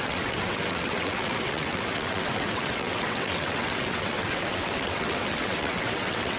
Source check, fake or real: fake